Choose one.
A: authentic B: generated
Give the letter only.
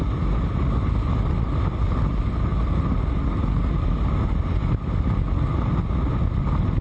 A